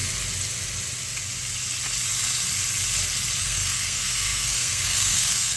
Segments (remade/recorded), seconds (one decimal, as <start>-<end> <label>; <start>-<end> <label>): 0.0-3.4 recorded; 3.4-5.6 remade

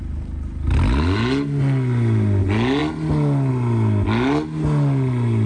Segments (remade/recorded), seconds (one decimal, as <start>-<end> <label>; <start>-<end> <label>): 0.0-5.5 recorded

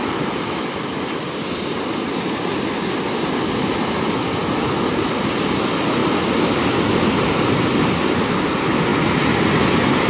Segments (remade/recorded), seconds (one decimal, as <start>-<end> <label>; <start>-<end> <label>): 0.0-10.1 recorded